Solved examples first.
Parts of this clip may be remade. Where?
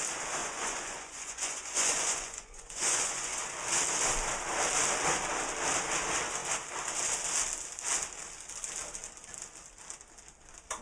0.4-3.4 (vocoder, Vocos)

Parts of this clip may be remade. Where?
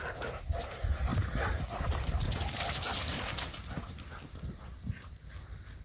none